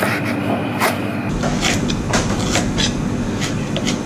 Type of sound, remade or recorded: recorded